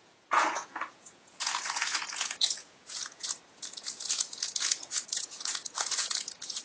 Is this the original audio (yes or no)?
no